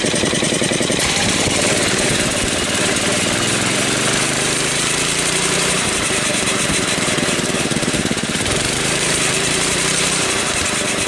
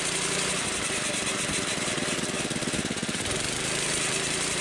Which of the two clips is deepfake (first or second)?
first